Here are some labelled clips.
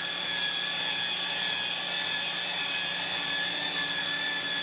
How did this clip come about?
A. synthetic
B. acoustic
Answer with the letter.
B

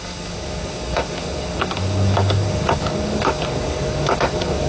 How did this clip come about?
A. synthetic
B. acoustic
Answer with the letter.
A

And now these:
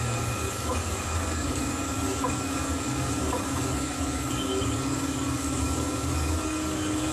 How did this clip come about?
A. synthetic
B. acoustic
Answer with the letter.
A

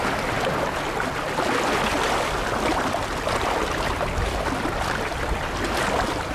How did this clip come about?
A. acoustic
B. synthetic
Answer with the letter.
A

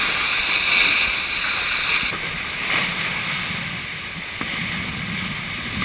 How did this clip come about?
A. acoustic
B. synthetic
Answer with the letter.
A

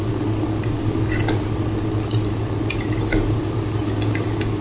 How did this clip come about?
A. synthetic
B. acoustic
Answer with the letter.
B